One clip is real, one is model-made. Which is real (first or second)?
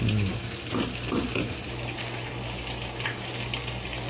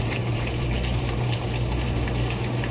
first